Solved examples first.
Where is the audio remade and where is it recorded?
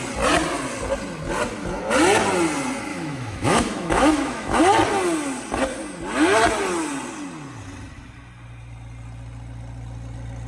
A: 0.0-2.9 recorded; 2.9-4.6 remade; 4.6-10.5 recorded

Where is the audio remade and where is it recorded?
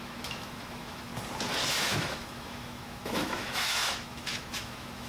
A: 0.0-1.1 remade; 1.1-1.7 recorded; 1.7-5.1 remade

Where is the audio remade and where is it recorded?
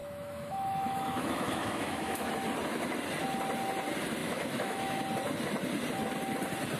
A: 0.0-2.3 remade; 2.3-4.2 recorded; 4.2-5.0 remade; 5.0-6.8 recorded